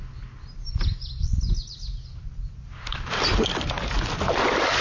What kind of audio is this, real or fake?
real